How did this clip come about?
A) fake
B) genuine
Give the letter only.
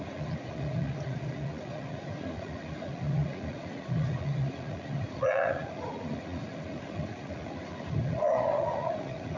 A